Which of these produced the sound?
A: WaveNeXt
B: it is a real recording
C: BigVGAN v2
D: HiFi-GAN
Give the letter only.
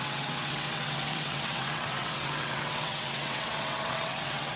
A